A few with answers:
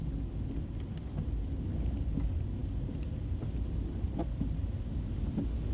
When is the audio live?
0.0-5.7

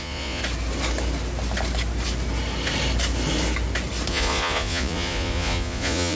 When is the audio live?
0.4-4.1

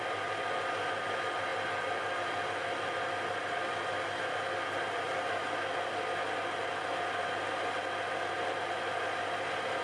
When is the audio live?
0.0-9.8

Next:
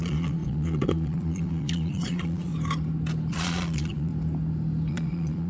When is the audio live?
2.5-3.3; 4.1-4.9

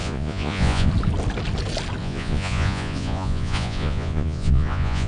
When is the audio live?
0.9-2.0

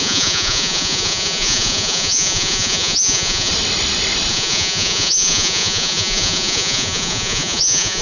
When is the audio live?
3.5-4.3